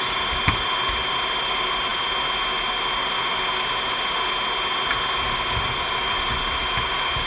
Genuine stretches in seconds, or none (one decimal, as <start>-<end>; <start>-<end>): 0.0-7.3